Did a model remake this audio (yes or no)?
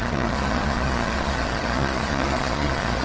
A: yes